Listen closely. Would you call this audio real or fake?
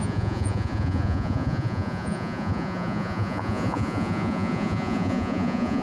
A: fake